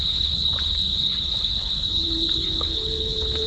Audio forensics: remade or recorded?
remade